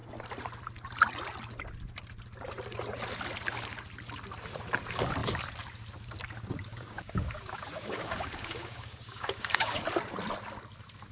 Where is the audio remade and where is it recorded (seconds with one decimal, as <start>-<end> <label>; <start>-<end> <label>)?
0.0-6.7 recorded; 6.7-9.8 remade; 9.8-11.1 recorded